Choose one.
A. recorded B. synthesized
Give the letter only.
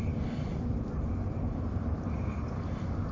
A